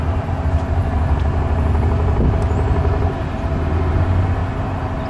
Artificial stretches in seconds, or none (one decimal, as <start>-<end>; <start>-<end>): none

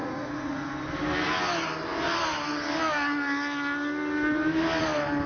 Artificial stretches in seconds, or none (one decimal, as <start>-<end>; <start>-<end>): 0.0-0.7

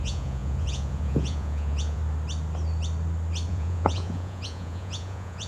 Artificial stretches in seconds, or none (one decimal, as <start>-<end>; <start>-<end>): 0.0-2.0; 3.5-5.5

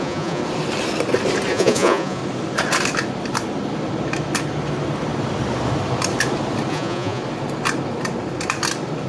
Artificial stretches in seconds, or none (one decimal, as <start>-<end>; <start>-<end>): 0.0-0.4; 1.5-2.2; 6.7-7.2

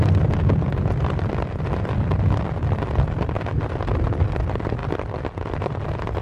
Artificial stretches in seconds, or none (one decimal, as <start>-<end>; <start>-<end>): none